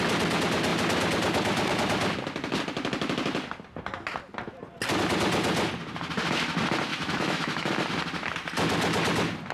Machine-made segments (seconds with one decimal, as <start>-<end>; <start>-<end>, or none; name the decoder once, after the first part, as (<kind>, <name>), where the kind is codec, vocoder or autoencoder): 6.9-7.7 (autoencoder, DAC-VAE)